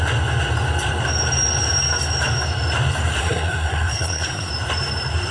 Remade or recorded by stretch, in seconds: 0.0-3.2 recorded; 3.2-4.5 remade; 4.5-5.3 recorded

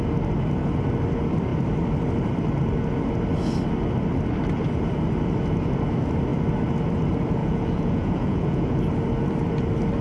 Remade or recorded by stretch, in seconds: 0.0-7.4 recorded; 7.4-8.8 remade; 8.8-10.0 recorded

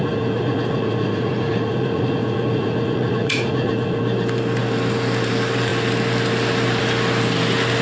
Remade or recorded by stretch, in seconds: 0.0-4.0 remade; 4.0-7.8 recorded